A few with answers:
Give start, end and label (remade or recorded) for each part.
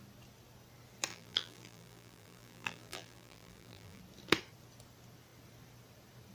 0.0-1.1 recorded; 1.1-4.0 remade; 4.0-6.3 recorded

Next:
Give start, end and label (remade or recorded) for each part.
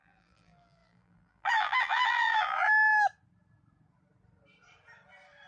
0.0-2.9 remade; 2.9-5.5 recorded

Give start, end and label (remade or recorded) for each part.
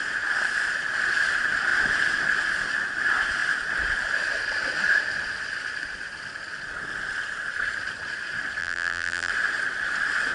0.0-8.6 recorded; 8.6-9.3 remade; 9.3-10.3 recorded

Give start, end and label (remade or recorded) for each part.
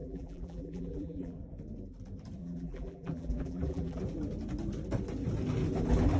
0.0-1.4 remade; 1.4-2.4 recorded; 2.4-4.0 remade; 4.0-6.2 recorded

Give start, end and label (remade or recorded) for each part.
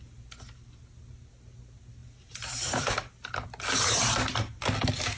0.0-5.2 recorded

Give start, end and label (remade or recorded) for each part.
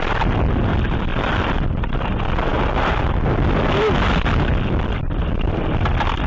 0.0-1.1 recorded; 1.1-1.7 remade; 1.7-6.3 recorded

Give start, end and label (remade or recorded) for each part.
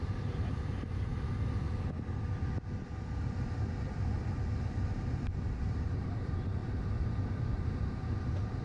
0.0-1.1 remade; 1.1-5.3 recorded; 5.3-8.6 remade